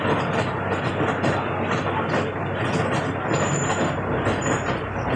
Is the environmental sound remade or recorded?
recorded